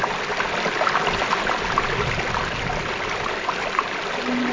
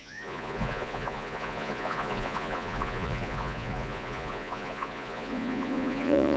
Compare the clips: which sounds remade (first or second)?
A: second